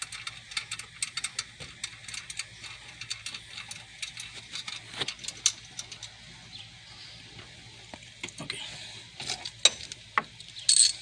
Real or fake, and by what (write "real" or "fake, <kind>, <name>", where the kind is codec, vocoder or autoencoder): real